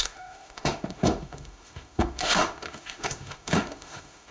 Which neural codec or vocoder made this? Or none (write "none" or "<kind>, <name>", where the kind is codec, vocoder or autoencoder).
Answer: autoencoder, DAC-VAE